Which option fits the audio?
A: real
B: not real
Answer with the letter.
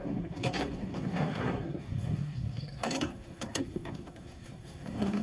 B